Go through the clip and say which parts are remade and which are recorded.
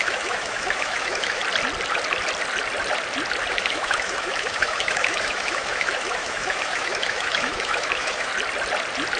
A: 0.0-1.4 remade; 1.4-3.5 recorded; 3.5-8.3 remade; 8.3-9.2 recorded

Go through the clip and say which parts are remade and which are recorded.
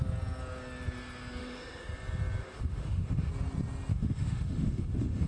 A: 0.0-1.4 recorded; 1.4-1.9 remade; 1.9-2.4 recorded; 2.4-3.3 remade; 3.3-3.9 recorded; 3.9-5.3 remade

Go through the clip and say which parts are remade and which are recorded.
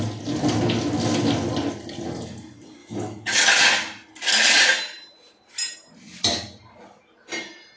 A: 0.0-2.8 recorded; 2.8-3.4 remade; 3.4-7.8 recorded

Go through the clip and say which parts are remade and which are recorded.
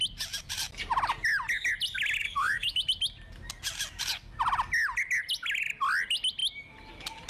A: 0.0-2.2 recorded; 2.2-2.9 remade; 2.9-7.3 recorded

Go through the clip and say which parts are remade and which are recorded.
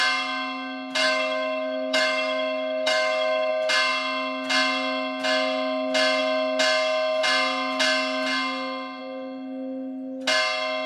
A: 0.0-1.0 recorded; 1.0-3.5 remade; 3.5-10.9 recorded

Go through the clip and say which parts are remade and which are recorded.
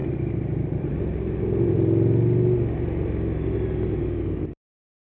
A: 0.0-5.0 recorded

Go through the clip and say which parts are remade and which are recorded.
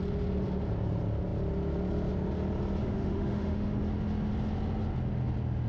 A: 0.0-2.8 recorded; 2.8-3.8 remade; 3.8-5.7 recorded